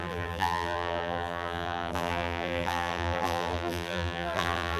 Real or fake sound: fake